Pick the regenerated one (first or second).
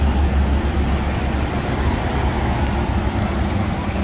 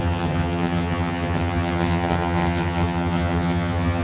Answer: second